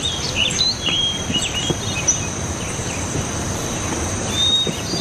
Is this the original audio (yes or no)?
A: no